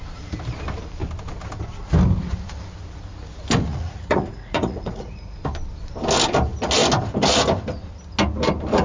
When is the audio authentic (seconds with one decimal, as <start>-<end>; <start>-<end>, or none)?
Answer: 0.0-3.7; 5.4-8.8